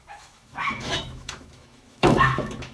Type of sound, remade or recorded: remade